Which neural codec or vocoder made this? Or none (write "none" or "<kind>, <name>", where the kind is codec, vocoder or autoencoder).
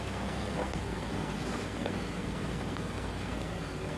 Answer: codec, SNAC